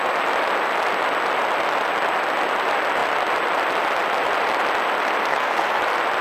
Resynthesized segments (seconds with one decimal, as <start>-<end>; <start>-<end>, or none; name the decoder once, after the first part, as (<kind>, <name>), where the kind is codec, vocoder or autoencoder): 5.3-5.8 (codec, SNAC)